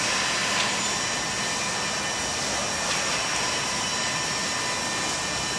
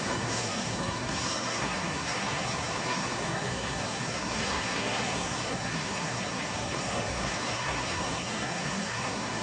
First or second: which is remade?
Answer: second